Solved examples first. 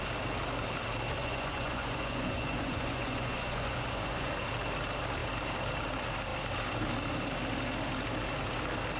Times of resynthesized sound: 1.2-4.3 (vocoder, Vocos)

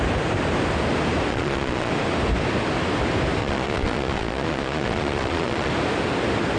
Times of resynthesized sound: 1.3-1.9 (vocoder, Vocos); 3.4-5.7

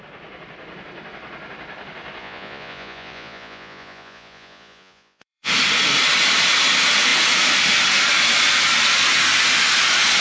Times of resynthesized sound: 2.2-5.5 (vocoder, Vocos)

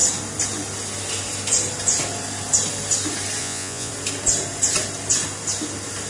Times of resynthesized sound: 3.4-3.9 (vocoder, Vocos)

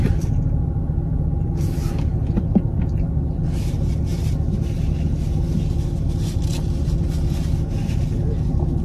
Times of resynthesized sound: none